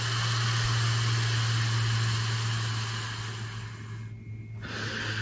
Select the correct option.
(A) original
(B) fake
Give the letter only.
A